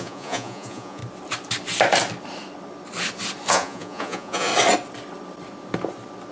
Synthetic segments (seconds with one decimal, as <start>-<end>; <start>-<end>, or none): 0.0-1.0; 3.5-4.5

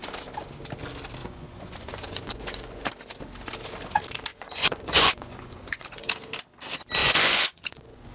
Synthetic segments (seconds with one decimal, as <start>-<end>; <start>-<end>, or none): 1.2-2.9; 4.3-6.1; 7.0-8.1

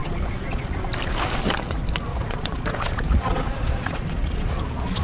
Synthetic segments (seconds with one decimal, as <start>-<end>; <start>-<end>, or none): 0.0-0.8; 2.1-4.5

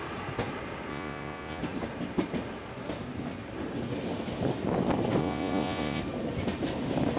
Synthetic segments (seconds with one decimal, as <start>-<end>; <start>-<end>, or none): 0.9-1.6; 5.2-6.0